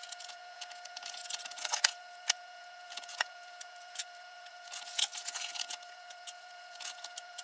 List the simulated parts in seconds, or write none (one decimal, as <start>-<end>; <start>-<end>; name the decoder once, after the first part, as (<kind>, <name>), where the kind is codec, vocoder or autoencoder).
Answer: 0.0-7.4 (vocoder, Vocos)